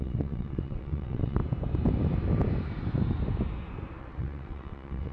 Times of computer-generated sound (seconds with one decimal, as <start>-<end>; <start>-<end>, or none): 0.0-1.4; 4.0-5.1